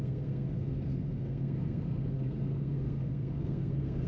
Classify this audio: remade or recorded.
remade